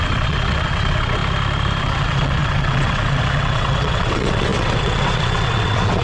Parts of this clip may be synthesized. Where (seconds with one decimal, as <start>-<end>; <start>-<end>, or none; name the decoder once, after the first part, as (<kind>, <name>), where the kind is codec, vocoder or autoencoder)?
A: 0.0-1.2 (vocoder, WaveNeXt); 1.8-6.0